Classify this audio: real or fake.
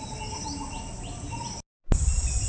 real